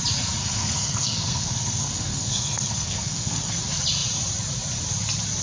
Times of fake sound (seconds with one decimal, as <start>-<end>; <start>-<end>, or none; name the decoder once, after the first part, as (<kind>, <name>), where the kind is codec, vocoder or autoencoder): 0.4-3.6 (codec, SNAC)